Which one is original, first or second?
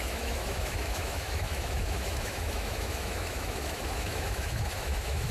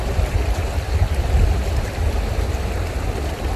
second